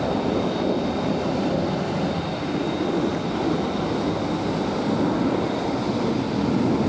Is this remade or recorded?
recorded